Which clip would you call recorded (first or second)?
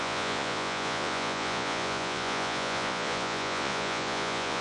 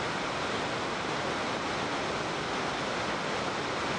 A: second